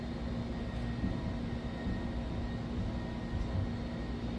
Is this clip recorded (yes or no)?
yes